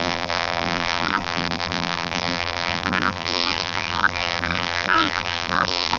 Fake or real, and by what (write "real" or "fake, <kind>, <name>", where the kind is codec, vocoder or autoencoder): fake, vocoder, BigVGAN v2